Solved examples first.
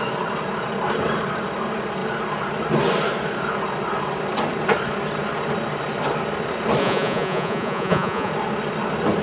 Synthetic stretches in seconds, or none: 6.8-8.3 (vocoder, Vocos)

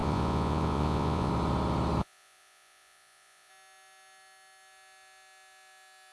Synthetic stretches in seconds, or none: 0.0-1.3 (vocoder, Vocos); 2.0-3.5

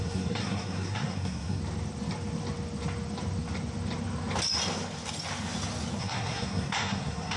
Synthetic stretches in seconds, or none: 0.0-1.6 (codec, SNAC); 6.0-7.4

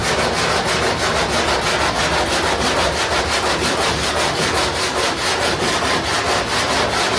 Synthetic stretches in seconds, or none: none

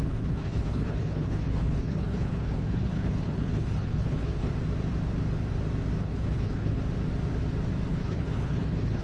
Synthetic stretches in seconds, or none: 0.0-4.5 (codec, HILCodec); 6.0-6.8; 7.9-9.0

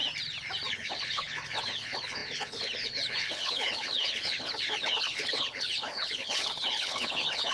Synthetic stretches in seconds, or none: 0.7-7.5 (codec, HILCodec)